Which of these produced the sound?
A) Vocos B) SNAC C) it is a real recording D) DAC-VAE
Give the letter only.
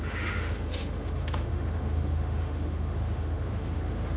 D